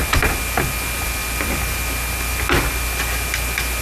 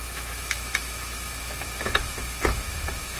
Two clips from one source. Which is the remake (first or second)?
second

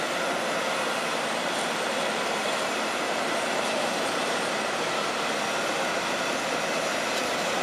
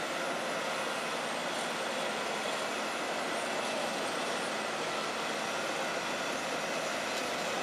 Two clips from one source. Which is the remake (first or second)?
first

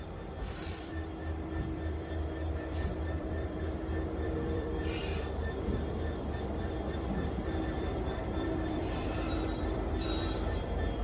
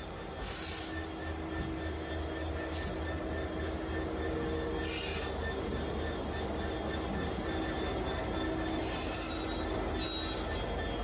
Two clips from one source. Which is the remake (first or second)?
first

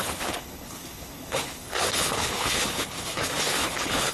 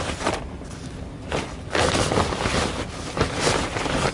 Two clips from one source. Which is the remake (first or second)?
first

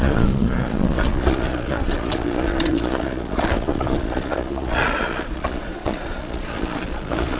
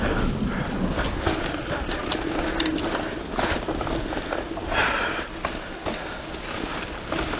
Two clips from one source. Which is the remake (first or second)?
first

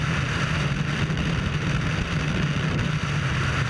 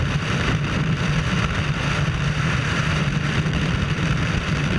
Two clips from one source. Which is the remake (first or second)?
second